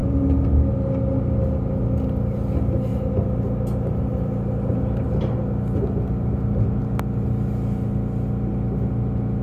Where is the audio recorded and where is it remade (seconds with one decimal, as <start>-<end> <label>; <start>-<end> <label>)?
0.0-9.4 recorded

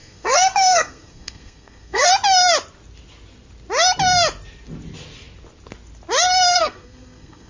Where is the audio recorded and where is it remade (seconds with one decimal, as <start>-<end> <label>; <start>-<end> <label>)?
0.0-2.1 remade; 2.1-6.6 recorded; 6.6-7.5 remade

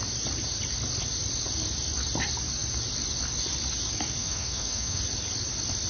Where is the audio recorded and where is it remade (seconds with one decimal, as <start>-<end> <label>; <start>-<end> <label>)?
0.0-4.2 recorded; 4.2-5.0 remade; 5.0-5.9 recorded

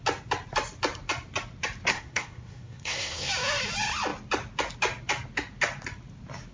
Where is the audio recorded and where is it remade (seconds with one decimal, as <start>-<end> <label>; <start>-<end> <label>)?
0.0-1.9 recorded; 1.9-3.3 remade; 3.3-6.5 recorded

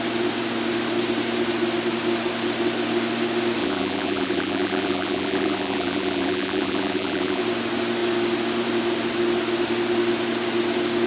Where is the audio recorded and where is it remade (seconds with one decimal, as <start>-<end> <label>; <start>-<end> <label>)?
0.0-3.6 recorded; 3.6-7.4 remade; 7.4-11.1 recorded

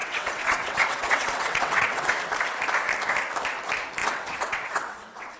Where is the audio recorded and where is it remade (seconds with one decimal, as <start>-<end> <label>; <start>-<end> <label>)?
0.0-2.1 remade; 2.1-4.0 recorded; 4.0-5.4 remade

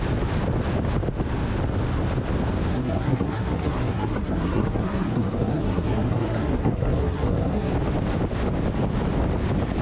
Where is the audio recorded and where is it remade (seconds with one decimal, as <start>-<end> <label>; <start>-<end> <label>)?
0.0-2.7 recorded; 2.7-7.7 remade; 7.7-9.8 recorded

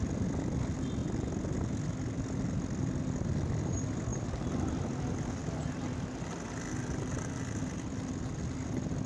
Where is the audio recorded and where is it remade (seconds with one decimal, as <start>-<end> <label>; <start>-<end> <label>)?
0.0-9.1 recorded